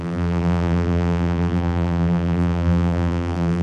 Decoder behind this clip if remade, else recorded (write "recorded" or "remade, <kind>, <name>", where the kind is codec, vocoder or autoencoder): remade, vocoder, BigVGAN v2